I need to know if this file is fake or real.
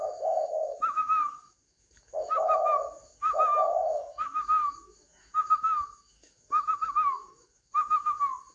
fake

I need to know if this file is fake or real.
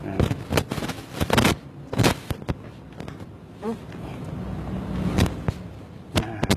real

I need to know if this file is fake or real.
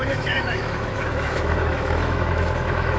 fake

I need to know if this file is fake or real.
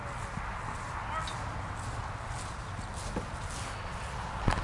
real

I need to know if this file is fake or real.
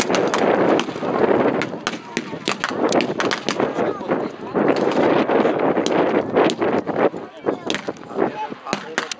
real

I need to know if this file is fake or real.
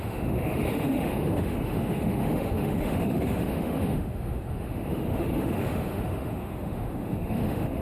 fake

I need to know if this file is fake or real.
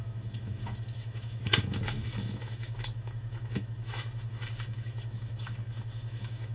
fake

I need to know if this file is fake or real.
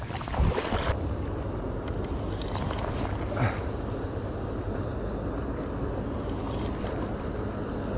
real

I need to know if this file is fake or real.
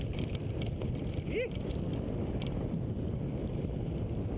real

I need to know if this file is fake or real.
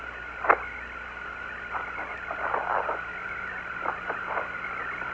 real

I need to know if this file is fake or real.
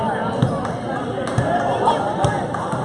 real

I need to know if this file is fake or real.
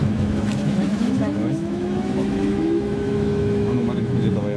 fake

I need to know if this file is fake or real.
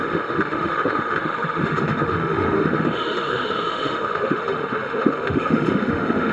fake